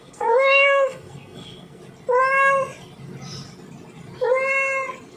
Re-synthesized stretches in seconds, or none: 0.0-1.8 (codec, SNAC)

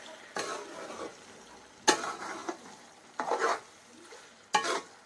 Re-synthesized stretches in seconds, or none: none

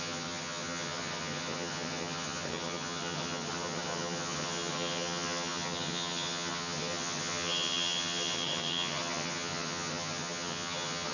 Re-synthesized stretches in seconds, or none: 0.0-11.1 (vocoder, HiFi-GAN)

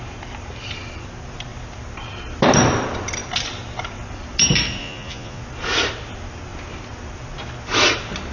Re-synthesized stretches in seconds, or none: 4.8-5.4 (vocoder, Vocos)

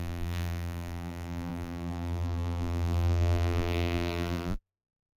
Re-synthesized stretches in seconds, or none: 0.0-5.2 (vocoder, BigVGAN v2)

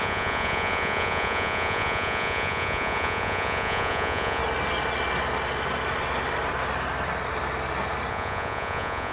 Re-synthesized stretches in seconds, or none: 0.0-4.4 (vocoder, Vocos); 8.1-9.1

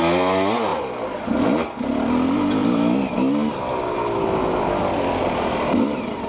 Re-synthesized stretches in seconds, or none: none

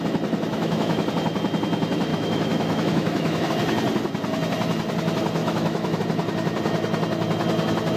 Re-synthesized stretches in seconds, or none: 0.5-1.1 (autoencoder, DAC-VAE); 2.1-3.5; 5.4-6.0